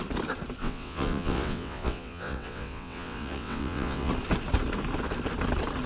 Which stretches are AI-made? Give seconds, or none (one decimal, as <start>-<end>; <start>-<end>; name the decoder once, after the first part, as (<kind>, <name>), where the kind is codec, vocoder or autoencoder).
0.6-4.1 (vocoder, WaveNeXt)